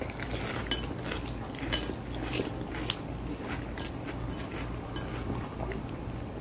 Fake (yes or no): no